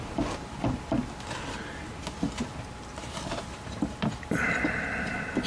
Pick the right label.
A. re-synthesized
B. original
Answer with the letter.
B